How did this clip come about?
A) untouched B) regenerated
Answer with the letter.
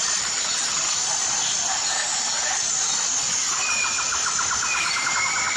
A